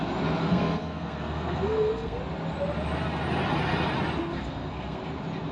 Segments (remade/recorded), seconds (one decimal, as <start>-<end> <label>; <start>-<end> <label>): 0.0-0.4 recorded; 0.4-2.2 remade; 2.2-4.2 recorded; 4.2-5.0 remade; 5.0-5.5 recorded